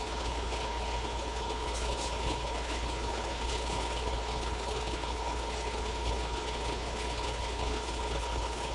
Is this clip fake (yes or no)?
yes